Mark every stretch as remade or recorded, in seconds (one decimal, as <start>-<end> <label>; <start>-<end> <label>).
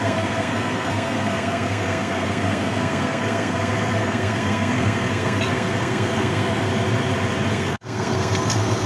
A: 0.0-6.7 remade; 6.7-7.5 recorded; 7.5-8.9 remade